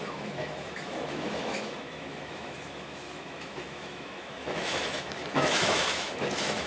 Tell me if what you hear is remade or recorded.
remade